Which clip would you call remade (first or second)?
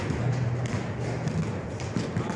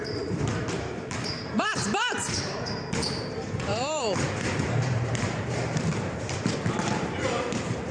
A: second